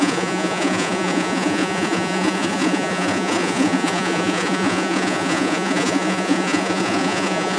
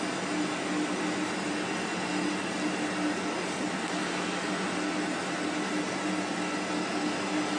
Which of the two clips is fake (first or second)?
first